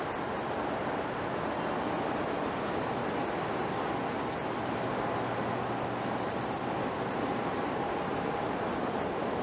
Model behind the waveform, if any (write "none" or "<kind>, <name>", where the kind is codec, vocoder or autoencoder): none